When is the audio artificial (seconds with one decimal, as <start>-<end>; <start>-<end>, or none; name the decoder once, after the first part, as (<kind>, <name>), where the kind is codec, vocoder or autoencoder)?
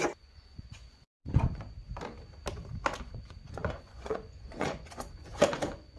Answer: 0.0-1.8 (vocoder, Vocos); 3.0-6.0